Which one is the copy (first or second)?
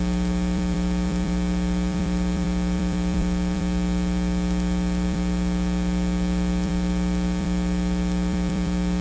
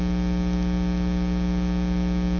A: first